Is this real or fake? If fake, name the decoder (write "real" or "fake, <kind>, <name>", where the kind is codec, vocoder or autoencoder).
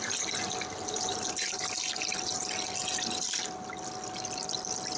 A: real